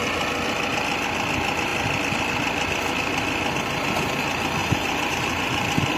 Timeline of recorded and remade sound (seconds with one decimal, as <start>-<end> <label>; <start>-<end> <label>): 0.0-4.6 recorded; 4.6-5.3 remade; 5.3-6.0 recorded